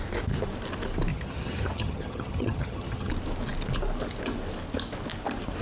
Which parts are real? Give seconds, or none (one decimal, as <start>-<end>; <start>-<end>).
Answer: 0.0-1.1; 3.1-5.6